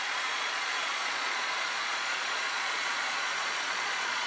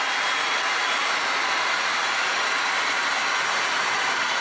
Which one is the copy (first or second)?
first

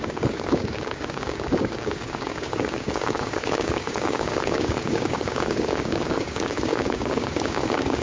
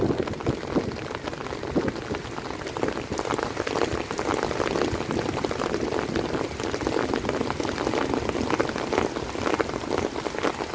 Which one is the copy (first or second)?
first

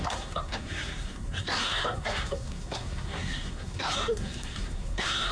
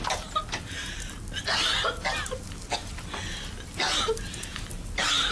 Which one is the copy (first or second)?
first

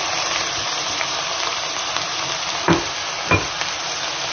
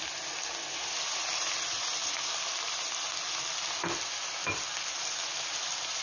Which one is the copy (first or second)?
first